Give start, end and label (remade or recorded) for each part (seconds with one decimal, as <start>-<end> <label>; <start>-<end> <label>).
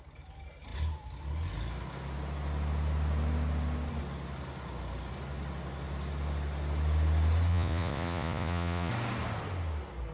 0.0-7.5 recorded; 7.5-8.9 remade; 8.9-10.1 recorded